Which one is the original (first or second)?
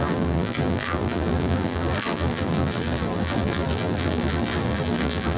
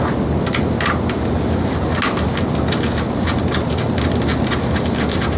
second